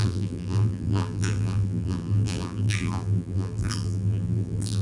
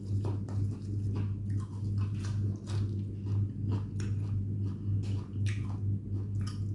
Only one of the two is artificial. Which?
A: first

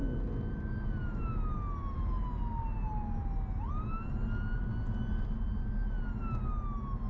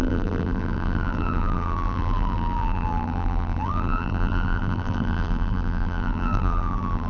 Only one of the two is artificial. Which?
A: second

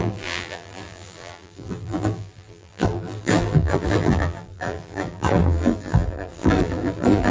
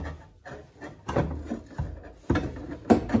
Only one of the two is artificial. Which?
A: first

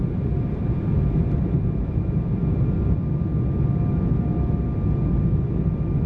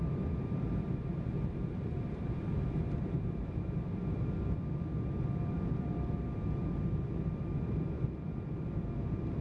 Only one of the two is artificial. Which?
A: second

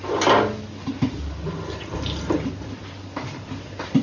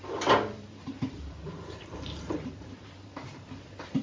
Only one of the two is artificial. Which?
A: second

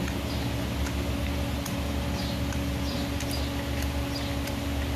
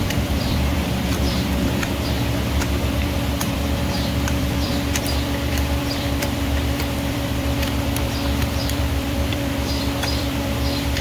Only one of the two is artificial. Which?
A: second